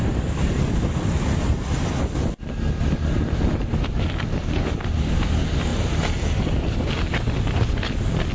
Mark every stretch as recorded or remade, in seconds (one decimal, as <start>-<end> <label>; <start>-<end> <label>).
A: 0.0-8.3 recorded